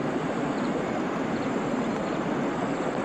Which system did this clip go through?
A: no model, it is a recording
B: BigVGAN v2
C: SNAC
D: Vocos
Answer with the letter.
A